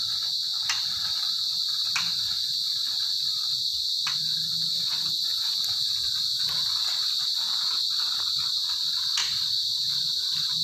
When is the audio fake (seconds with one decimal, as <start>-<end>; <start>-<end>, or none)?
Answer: none